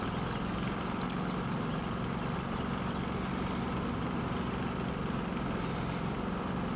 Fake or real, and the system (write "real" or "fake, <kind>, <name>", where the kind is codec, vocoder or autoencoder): real